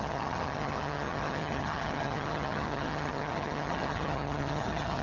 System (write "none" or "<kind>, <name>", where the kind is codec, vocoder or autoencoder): vocoder, HiFi-GAN